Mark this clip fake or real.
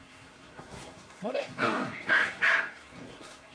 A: fake